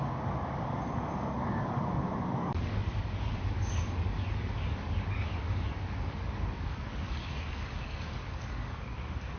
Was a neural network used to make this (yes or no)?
yes